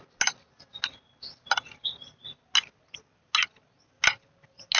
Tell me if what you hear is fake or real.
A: real